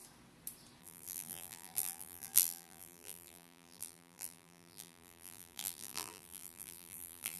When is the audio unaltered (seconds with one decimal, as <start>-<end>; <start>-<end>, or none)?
0.0-0.8